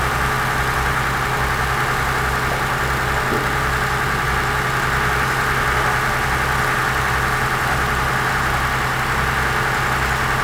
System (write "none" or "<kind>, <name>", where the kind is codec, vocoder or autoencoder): none